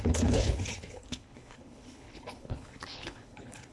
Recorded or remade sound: remade